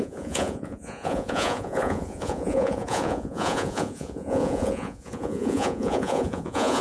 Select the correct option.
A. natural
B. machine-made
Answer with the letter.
B